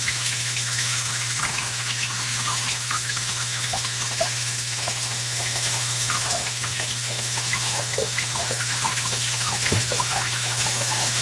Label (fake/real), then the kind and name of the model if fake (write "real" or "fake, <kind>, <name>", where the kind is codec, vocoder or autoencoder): fake, autoencoder, DAC-VAE